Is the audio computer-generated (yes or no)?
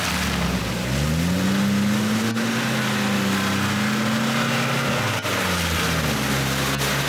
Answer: no